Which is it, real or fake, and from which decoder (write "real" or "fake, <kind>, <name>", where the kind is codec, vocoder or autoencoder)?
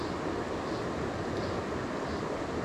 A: real